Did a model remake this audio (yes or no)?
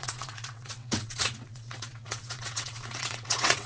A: yes